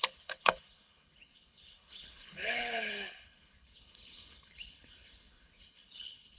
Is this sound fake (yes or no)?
yes